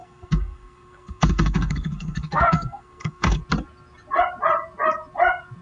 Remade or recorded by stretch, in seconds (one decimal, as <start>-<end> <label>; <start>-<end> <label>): 0.0-3.4 remade; 3.4-5.6 recorded